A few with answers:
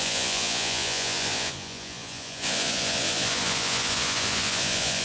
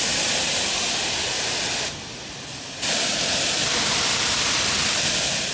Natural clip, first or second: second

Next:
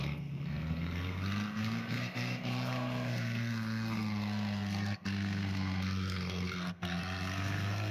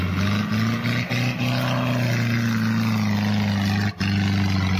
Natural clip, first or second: second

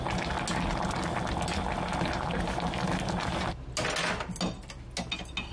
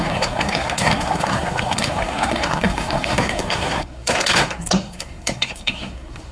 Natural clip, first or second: first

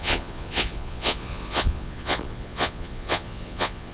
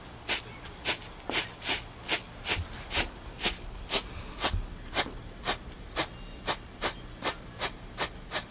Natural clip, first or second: second